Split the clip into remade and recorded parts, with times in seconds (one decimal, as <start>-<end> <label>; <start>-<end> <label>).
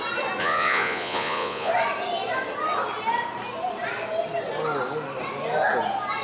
0.0-0.4 recorded; 0.4-1.7 remade; 1.7-6.2 recorded